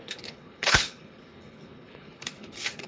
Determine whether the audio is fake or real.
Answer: fake